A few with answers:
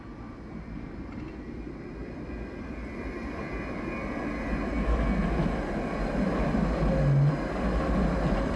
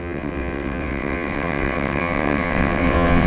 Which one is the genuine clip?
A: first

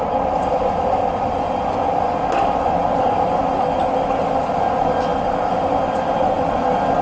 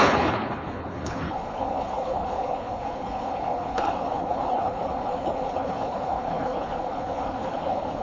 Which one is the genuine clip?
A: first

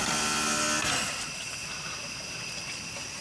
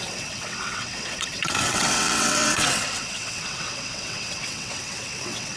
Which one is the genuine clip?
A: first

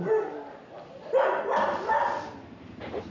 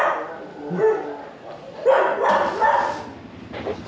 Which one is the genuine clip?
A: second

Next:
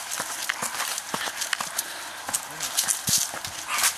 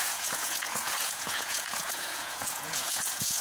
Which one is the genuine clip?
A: first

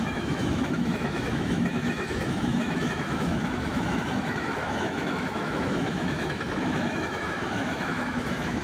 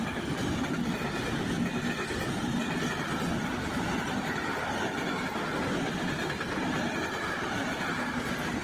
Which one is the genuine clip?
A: second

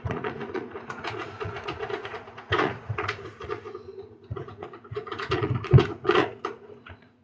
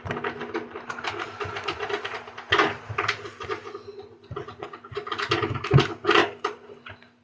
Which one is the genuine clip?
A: second